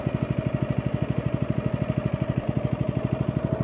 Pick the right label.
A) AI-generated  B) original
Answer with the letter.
B